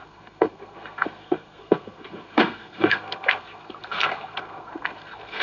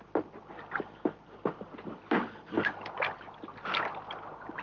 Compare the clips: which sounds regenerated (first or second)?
first